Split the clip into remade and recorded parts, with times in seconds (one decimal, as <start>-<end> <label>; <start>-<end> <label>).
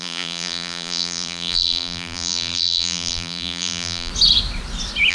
0.0-4.1 remade; 4.1-5.1 recorded